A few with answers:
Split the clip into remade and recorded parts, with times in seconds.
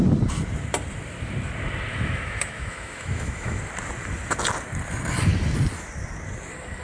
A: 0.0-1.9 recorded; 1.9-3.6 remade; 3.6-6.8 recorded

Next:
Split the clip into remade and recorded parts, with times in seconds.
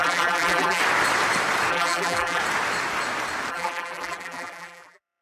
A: 0.0-0.8 remade; 0.8-1.7 recorded; 1.7-2.4 remade; 2.4-3.5 recorded; 3.5-5.2 remade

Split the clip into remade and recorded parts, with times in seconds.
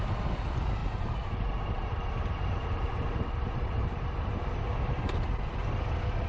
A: 0.0-0.8 recorded; 0.8-4.6 remade; 4.6-6.3 recorded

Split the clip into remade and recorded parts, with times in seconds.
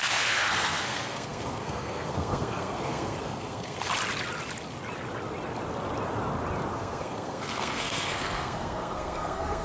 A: 0.0-3.9 remade; 3.9-6.7 recorded; 6.7-9.6 remade